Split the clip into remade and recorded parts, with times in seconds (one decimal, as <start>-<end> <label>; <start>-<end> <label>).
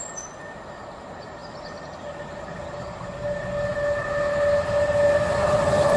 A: 0.0-6.0 recorded